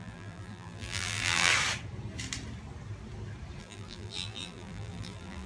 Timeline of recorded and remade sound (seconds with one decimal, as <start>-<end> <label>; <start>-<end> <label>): 0.0-1.5 remade; 1.5-3.6 recorded; 3.6-5.5 remade